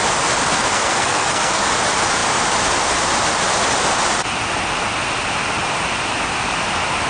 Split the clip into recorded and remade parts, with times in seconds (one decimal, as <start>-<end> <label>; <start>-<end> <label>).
0.0-0.6 recorded; 0.6-1.6 remade; 1.6-7.1 recorded